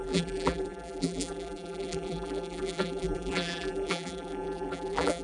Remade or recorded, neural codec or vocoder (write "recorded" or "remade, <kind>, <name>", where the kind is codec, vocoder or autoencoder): remade, vocoder, BigVGAN v2